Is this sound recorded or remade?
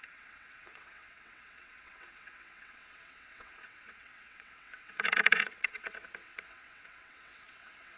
remade